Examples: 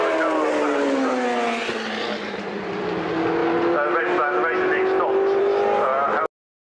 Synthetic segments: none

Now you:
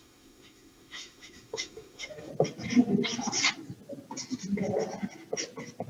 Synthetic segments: 0.0-2.3